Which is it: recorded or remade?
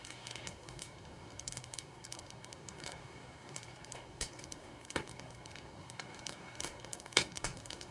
remade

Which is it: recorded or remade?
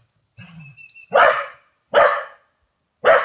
recorded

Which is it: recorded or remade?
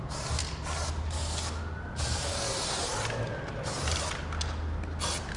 recorded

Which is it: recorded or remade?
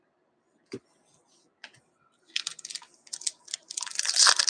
recorded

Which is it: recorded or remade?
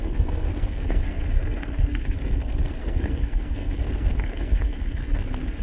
remade